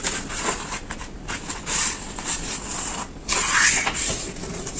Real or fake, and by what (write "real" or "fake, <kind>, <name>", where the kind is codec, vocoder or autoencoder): real